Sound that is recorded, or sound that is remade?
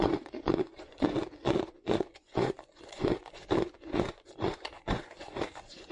remade